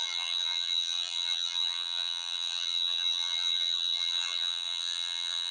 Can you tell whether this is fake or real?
fake